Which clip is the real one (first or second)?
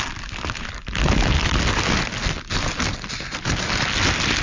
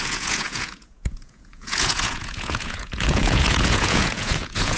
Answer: first